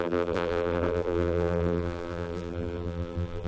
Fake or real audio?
fake